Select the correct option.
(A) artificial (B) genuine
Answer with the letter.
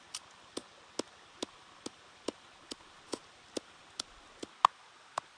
B